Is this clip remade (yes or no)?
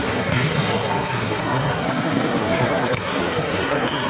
yes